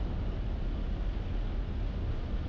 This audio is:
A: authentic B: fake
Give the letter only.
A